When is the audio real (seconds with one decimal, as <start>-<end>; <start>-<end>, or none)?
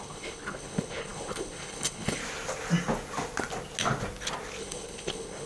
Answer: 2.2-4.6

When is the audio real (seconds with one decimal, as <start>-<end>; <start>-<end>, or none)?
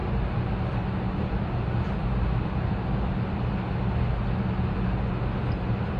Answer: 0.0-6.0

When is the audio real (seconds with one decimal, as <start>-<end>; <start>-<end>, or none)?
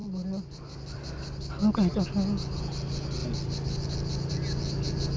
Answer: 0.0-5.2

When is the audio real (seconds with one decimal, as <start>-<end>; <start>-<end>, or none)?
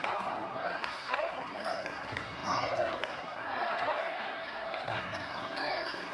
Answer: none